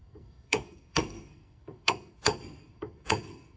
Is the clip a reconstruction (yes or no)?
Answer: yes